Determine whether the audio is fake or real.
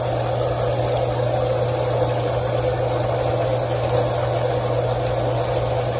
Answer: real